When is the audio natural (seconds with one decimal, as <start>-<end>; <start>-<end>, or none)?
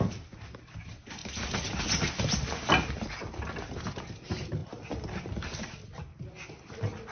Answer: 0.0-7.1